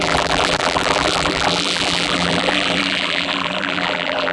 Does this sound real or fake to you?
fake